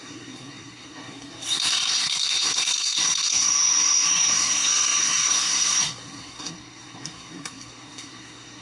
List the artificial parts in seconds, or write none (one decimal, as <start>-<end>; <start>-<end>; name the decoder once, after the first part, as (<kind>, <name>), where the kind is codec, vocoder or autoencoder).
0.0-8.6 (codec, SNAC)